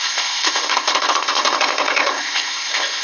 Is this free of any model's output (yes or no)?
no